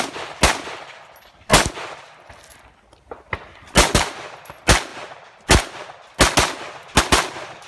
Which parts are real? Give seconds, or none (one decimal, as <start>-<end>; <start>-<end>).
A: 0.0-7.7